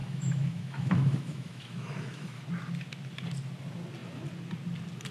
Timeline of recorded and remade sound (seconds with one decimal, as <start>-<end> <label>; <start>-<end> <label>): 0.0-2.4 remade; 2.4-5.1 recorded